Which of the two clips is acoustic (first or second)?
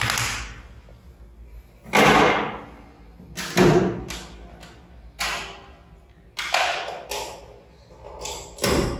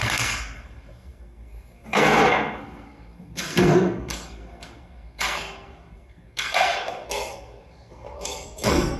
first